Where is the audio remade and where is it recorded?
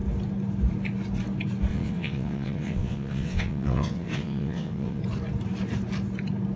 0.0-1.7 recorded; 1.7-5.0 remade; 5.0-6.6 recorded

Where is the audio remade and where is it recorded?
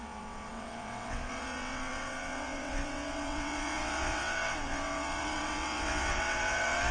0.0-6.9 remade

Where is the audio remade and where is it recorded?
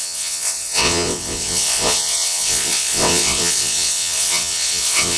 0.0-5.2 remade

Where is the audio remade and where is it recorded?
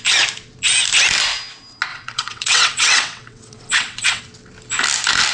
0.0-1.9 recorded; 1.9-4.2 remade; 4.2-5.3 recorded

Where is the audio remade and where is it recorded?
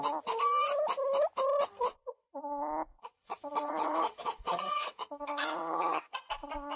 0.0-1.9 recorded; 1.9-2.4 remade; 2.4-2.9 recorded; 2.9-6.3 remade; 6.3-6.8 recorded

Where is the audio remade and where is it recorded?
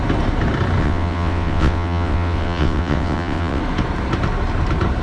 0.0-0.8 recorded; 0.8-3.6 remade; 3.6-5.0 recorded